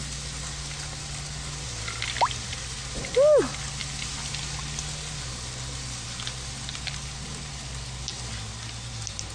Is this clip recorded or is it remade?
recorded